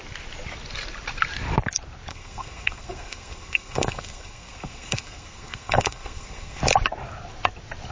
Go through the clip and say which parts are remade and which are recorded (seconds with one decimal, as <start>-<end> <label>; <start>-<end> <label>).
0.0-2.1 recorded; 2.1-6.6 remade; 6.6-7.9 recorded